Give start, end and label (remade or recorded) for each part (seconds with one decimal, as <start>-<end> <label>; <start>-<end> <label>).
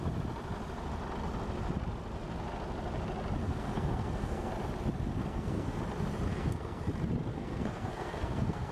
0.0-3.4 recorded; 3.4-4.5 remade; 4.5-5.2 recorded; 5.2-5.8 remade; 5.8-6.3 recorded; 6.3-6.8 remade; 6.8-7.3 recorded; 7.3-8.7 remade